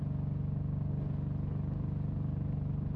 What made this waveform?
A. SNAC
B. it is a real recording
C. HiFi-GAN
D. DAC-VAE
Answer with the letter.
B